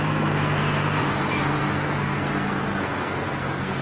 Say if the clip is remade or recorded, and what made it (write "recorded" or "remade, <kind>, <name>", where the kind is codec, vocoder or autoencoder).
remade, codec, SNAC